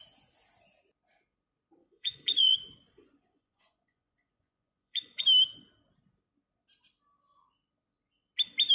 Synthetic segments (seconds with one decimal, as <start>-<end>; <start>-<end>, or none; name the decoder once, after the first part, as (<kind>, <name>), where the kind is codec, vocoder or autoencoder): 1.8-5.2 (vocoder, Vocos)

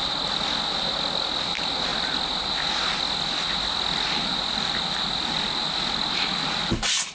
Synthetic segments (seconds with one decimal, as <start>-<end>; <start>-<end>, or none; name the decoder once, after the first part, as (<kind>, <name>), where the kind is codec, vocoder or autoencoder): none

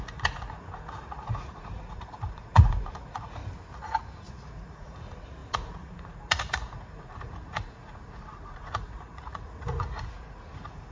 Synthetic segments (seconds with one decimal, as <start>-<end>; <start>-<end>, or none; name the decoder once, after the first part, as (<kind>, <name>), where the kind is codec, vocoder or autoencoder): 0.0-3.4 (vocoder, Vocos); 4.3-10.9